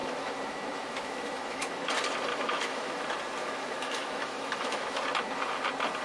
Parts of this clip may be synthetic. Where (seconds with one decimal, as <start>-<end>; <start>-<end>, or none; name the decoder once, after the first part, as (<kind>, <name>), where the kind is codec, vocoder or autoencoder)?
0.0-1.9 (autoencoder, DAC-VAE); 2.3-3.0; 3.4-5.0